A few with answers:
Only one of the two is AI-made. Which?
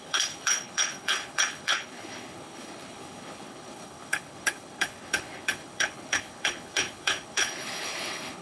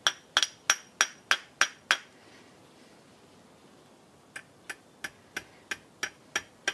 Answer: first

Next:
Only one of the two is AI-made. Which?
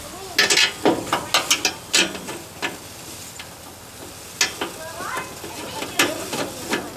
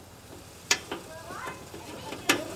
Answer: second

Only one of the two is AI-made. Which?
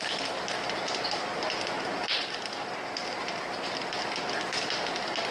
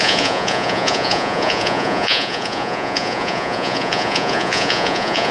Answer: second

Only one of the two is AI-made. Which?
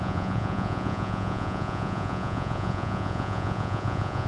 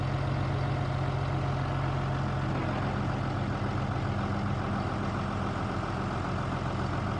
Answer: first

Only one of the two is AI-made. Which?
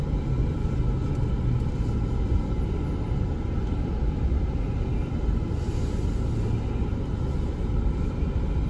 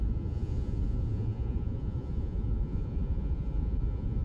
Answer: second